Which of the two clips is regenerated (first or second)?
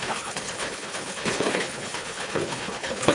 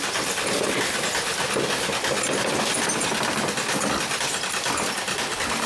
first